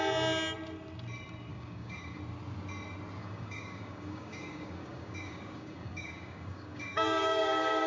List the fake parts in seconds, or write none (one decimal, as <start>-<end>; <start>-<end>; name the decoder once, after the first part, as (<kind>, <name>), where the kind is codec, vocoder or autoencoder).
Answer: 1.5-2.2 (codec, DAC); 3.2-7.9